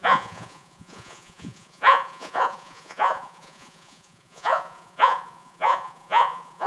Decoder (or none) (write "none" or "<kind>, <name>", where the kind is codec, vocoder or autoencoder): vocoder, Vocos